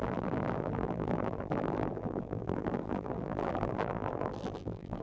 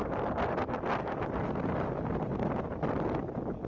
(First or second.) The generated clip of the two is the first